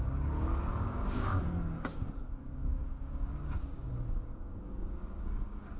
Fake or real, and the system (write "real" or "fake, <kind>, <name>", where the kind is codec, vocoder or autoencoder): fake, codec, DAC